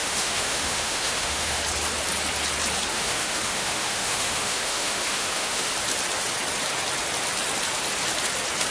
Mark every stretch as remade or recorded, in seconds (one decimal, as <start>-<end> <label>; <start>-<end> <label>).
0.0-1.6 remade; 1.6-2.9 recorded; 2.9-5.7 remade; 5.7-8.7 recorded